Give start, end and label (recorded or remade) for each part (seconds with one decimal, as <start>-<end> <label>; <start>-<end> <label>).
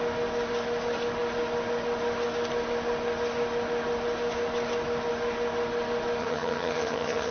0.0-6.2 recorded; 6.2-7.3 remade